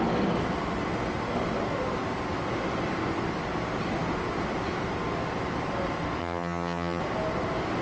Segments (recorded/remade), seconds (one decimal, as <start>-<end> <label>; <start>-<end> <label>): 0.0-6.2 recorded; 6.2-7.0 remade; 7.0-7.8 recorded